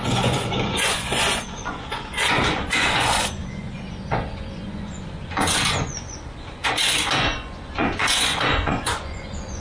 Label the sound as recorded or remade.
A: remade